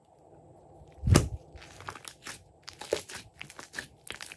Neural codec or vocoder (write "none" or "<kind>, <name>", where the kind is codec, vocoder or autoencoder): none